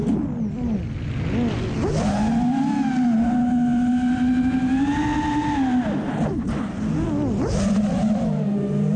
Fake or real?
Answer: real